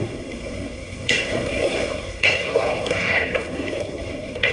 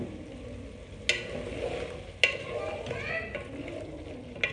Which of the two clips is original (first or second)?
second